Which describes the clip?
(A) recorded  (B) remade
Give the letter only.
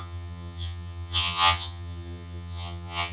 B